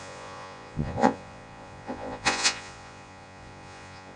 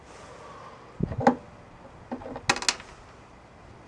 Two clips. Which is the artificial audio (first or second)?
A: first